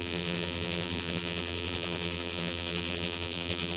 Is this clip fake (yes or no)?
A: yes